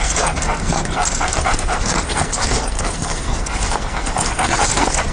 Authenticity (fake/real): fake